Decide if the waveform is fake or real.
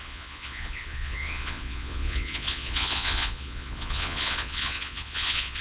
fake